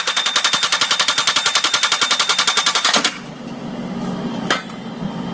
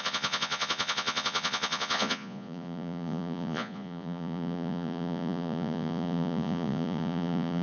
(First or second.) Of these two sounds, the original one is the first